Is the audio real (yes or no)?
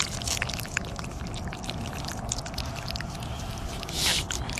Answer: yes